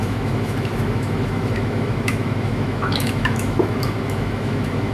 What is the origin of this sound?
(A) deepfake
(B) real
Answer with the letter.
A